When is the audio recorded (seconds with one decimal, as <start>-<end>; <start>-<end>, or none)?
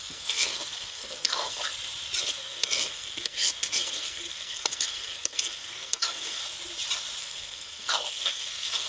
1.7-2.2; 6.4-7.2